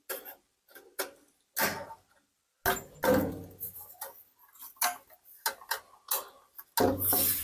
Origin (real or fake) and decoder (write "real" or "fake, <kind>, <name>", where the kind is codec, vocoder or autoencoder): real